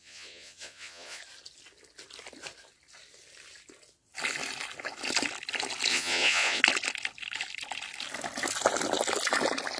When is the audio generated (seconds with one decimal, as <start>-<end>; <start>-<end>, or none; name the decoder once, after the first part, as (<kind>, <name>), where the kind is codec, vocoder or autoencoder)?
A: 0.0-1.2 (vocoder, Vocos); 5.9-6.6

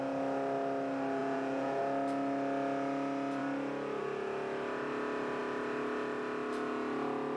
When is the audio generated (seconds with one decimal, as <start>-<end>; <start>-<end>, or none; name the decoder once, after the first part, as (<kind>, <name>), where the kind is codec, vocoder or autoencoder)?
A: 1.2-1.8 (vocoder, Vocos)